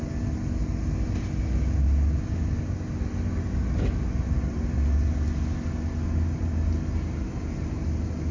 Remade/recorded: recorded